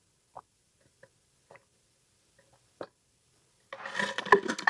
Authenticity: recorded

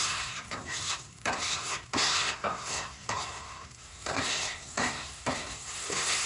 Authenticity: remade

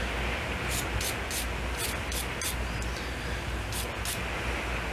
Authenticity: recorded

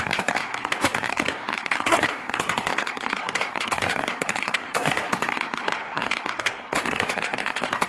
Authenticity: remade